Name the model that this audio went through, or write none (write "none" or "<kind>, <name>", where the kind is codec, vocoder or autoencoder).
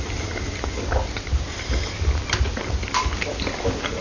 none